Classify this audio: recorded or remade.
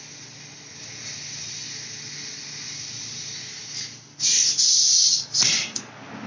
recorded